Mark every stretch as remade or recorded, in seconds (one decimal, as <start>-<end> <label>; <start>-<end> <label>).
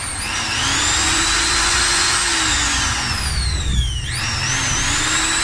0.0-1.0 recorded; 1.0-2.1 remade; 2.1-2.5 recorded; 2.5-3.2 remade; 3.2-5.4 recorded